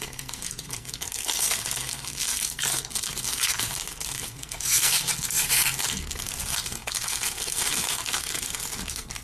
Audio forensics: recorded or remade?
remade